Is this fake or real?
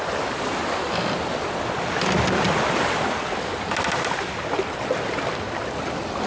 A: real